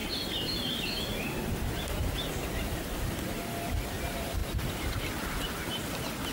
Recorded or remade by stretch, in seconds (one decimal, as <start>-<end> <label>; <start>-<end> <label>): 0.0-6.3 recorded